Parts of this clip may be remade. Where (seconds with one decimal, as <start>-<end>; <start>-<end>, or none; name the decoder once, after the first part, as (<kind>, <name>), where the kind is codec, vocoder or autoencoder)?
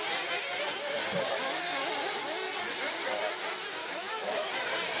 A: 3.8-4.5 (autoencoder, DAC-VAE)